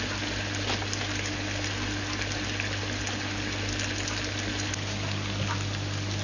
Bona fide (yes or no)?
yes